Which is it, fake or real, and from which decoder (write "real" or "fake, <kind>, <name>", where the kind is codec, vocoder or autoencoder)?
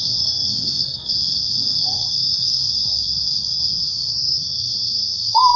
fake, codec, SNAC